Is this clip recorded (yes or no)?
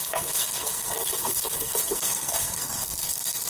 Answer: no